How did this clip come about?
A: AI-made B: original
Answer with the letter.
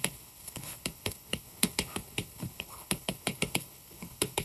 A